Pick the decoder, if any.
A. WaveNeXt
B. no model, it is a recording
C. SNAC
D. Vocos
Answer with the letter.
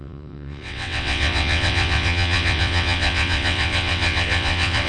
A